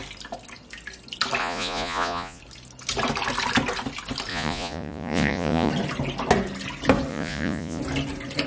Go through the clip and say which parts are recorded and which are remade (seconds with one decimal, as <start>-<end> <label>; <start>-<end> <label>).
0.0-1.4 recorded; 1.4-2.4 remade; 2.4-4.3 recorded; 4.3-5.7 remade; 5.7-7.1 recorded; 7.1-7.8 remade; 7.8-8.5 recorded